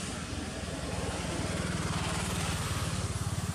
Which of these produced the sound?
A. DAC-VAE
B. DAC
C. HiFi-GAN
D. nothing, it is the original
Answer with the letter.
D